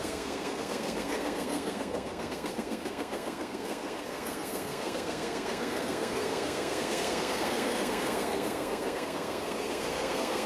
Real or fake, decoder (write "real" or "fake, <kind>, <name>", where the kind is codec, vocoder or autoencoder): fake, codec, SNAC